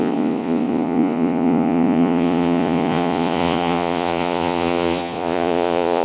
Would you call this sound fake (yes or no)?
yes